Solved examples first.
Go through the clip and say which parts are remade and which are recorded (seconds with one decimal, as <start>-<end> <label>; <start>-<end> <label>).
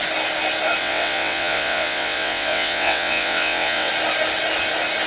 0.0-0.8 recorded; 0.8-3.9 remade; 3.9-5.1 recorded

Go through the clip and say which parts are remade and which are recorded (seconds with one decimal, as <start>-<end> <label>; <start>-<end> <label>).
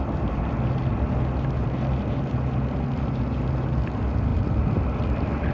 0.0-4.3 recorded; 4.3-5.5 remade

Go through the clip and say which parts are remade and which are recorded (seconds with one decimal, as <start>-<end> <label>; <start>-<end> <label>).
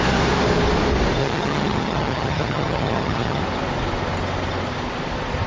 0.0-1.2 recorded; 1.2-3.4 remade; 3.4-5.5 recorded